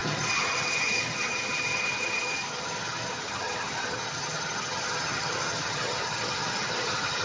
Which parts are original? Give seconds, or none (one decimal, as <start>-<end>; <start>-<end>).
none